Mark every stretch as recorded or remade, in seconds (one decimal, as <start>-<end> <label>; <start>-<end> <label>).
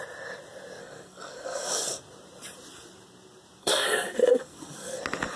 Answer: 0.0-0.8 recorded; 0.8-2.0 remade; 2.0-3.6 recorded; 3.6-5.0 remade; 5.0-5.4 recorded